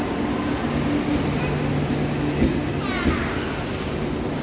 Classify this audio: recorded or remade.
recorded